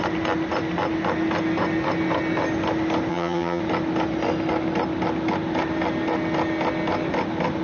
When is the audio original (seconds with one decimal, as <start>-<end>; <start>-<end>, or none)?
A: 0.0-3.1; 3.6-7.6